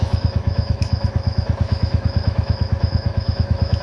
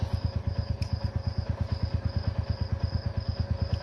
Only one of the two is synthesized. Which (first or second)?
first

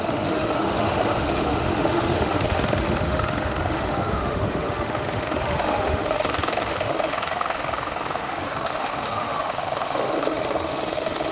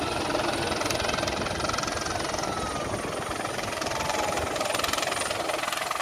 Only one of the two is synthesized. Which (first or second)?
first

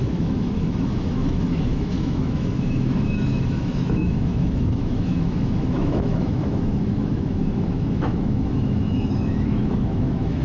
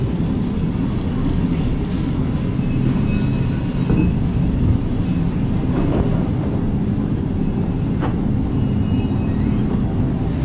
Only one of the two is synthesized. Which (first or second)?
first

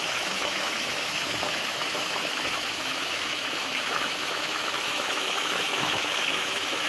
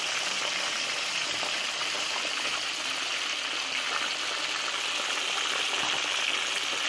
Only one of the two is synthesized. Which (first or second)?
first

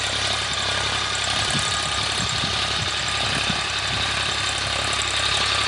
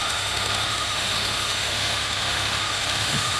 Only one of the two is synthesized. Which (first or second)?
second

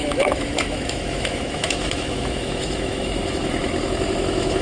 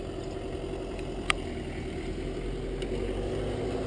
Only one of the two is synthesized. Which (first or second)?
first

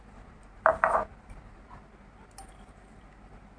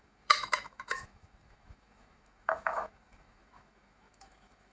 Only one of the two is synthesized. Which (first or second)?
second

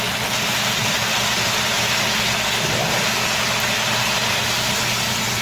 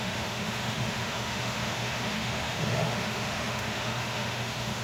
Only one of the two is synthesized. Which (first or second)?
second